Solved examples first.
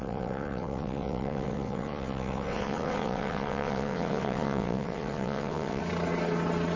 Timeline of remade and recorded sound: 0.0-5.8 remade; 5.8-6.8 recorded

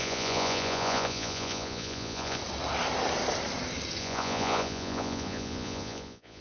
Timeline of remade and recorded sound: 0.0-2.4 remade; 2.4-4.0 recorded; 4.0-6.4 remade